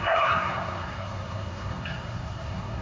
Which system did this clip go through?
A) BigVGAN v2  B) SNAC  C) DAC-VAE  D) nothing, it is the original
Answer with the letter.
B